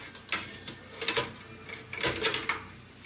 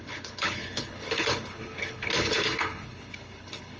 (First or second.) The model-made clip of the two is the second